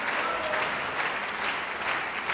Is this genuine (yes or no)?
yes